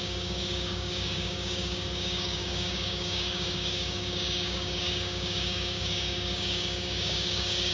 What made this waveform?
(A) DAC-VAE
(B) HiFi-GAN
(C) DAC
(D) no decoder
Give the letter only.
C